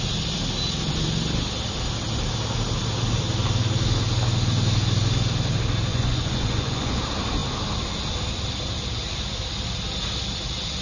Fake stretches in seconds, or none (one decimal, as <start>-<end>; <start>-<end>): 5.9-7.0